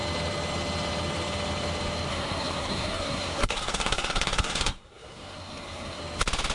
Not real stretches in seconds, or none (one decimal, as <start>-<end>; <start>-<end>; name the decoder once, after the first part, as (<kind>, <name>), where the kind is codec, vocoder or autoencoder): 2.1-6.0 (codec, SNAC)